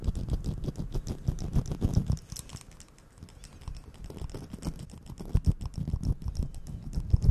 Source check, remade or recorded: recorded